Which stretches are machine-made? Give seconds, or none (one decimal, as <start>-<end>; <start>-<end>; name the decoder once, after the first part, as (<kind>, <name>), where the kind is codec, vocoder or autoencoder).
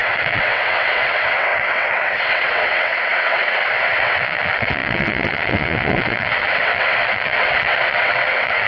0.0-8.7 (vocoder, WaveNeXt)